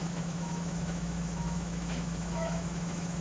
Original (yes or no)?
no